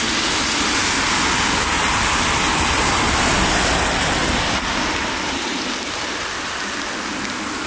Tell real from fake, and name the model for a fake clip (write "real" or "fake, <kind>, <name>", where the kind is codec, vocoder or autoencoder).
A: real